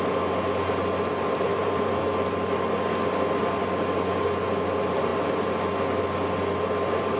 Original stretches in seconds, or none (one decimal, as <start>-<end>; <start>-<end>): 0.0-1.5; 2.0-7.2